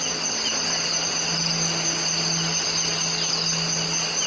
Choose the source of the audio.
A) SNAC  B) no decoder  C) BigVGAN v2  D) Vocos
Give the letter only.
B